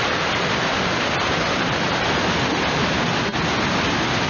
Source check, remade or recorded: recorded